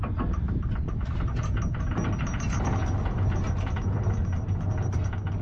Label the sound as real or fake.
real